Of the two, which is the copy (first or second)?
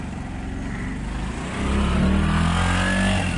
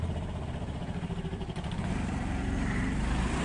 second